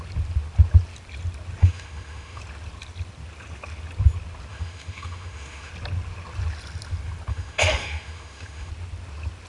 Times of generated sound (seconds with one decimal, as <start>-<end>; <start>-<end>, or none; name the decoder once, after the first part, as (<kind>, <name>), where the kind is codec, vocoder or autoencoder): 1.6-2.4 (autoencoder, DAC-VAE); 4.5-5.7; 7.3-8.7